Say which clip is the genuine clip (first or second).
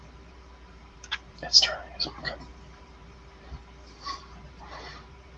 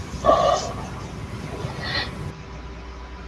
second